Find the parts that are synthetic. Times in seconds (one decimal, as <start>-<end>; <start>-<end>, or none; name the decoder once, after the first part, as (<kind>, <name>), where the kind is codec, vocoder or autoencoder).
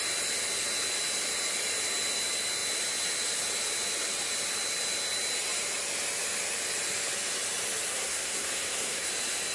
7.9-9.1 (codec, SNAC)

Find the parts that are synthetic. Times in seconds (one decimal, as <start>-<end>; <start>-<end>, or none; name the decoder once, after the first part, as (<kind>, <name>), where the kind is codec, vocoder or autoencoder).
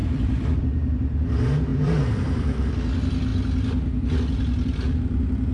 0.0-0.6 (vocoder, BigVGAN v2); 1.7-2.7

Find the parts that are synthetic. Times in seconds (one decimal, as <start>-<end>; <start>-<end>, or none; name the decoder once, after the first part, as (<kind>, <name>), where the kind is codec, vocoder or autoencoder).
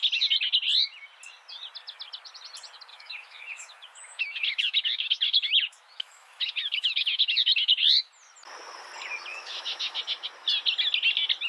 2.9-8.1 (autoencoder, DAC-VAE); 9.3-10.0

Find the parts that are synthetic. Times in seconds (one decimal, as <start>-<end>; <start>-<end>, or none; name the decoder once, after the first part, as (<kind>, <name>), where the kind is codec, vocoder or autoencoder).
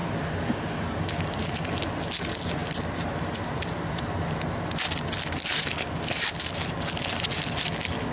none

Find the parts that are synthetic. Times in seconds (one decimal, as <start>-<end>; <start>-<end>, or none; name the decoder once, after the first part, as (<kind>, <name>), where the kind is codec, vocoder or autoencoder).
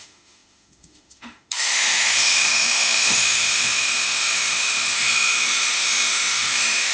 0.0-6.9 (autoencoder, DAC-VAE)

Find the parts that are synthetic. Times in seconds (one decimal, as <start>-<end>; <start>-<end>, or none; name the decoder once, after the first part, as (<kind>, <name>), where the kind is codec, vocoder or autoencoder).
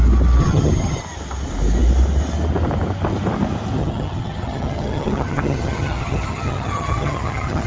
0.4-1.0 (vocoder, HiFi-GAN); 3.8-7.7